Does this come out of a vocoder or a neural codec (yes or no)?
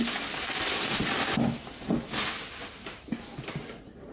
no